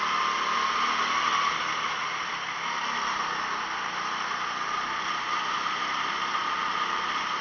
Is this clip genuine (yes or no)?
yes